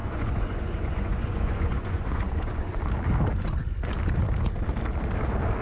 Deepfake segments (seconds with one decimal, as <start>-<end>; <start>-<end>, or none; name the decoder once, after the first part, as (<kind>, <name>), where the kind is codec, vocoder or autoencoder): 0.0-2.8 (vocoder, Vocos)